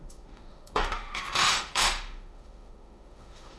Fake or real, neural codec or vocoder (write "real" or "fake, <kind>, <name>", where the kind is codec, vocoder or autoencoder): fake, autoencoder, DAC-VAE